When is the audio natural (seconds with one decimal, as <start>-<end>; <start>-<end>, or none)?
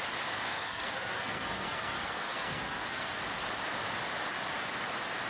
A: 0.0-0.5; 3.2-5.3